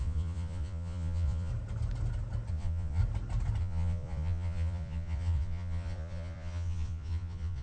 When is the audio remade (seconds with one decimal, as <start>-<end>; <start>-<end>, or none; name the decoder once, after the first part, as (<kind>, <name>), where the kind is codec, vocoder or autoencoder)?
0.0-1.5 (vocoder, Vocos); 2.5-3.0; 3.6-7.6